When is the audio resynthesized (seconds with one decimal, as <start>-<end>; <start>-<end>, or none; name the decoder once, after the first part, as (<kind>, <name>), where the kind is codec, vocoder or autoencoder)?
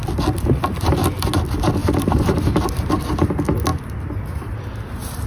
1.8-2.9 (vocoder, BigVGAN v2)